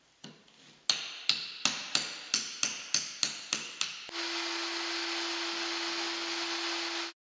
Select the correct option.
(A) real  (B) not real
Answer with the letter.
A